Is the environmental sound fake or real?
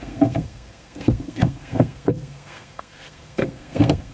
fake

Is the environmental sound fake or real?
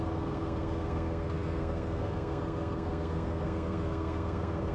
fake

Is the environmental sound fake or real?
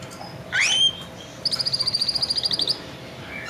real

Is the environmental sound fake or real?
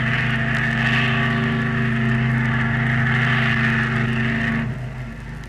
real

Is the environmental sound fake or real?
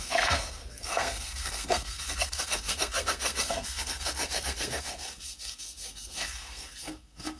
fake